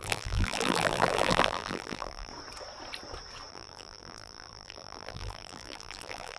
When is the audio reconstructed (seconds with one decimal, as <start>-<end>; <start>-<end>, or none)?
0.0-2.3; 3.5-6.4